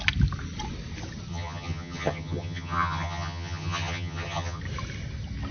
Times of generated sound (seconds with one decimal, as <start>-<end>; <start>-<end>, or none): 1.3-4.6